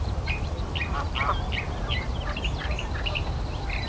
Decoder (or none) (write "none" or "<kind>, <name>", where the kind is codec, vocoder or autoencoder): vocoder, BigVGAN v2